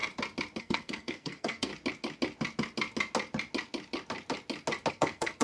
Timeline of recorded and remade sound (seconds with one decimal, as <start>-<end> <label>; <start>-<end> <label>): 0.0-0.6 recorded; 0.6-1.7 remade; 1.7-4.9 recorded; 4.9-5.4 remade